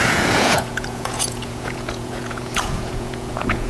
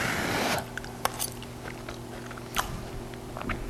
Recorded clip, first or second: second